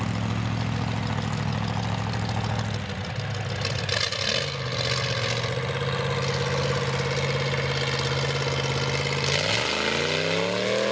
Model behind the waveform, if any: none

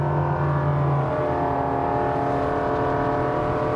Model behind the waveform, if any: none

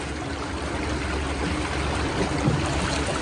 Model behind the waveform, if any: none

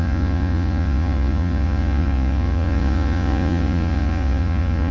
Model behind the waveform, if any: vocoder, Vocos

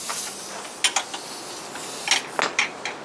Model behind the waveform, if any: none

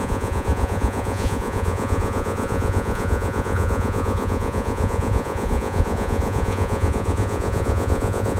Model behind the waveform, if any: vocoder, Vocos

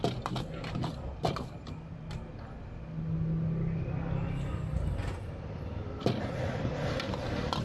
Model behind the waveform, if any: none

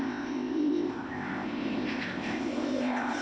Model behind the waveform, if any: codec, ZipCodec